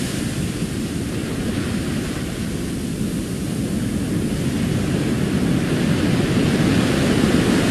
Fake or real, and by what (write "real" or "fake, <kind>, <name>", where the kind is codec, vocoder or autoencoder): real